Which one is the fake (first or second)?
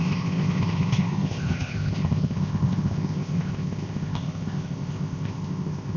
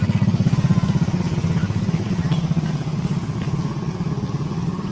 first